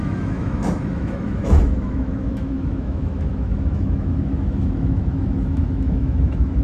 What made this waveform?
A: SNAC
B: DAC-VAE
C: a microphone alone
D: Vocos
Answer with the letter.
B